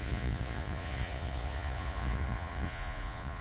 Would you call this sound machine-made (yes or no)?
yes